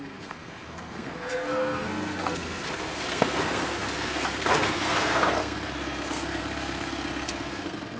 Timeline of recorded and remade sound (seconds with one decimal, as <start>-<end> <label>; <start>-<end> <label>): 0.0-8.0 remade